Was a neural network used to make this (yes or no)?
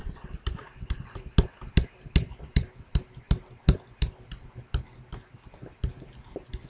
no